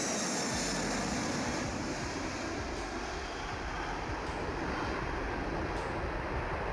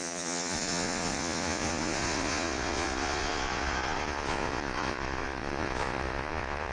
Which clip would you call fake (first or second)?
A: second